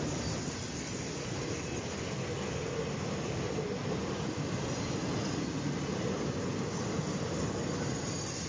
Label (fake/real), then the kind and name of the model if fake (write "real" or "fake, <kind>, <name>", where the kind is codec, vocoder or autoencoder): real